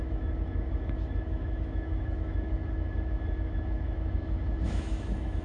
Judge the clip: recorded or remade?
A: remade